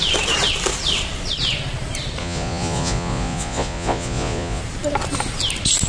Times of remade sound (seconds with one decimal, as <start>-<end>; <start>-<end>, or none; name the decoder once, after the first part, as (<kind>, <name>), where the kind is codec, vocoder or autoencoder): 2.2-4.6 (vocoder, Vocos)